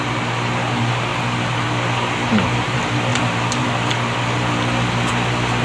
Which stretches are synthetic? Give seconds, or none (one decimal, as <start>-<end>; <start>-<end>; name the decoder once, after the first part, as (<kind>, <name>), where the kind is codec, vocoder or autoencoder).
3.1-3.7 (vocoder, BigVGAN v2)